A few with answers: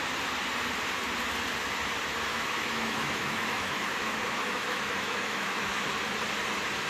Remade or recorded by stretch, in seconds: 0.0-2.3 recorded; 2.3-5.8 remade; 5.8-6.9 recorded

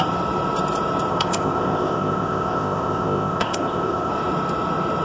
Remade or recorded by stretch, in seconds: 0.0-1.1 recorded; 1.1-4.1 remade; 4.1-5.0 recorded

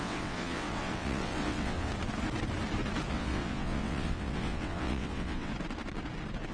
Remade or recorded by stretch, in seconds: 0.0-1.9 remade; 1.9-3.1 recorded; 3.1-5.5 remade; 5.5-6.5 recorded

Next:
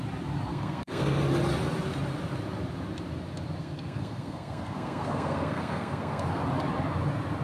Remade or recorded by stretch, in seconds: 0.0-0.5 recorded; 0.5-1.2 remade; 1.2-3.6 recorded; 3.6-6.4 remade; 6.4-7.4 recorded